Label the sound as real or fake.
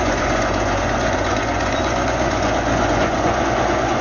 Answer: fake